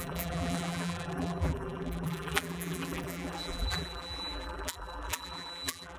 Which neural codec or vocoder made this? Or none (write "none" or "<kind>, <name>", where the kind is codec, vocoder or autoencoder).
vocoder, BigVGAN v2